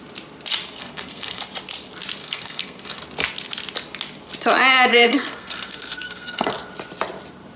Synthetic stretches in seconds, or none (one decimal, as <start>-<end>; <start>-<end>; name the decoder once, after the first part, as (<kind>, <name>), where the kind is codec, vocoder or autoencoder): 0.8-1.4 (codec, SNAC); 2.2-3.0; 4.9-6.5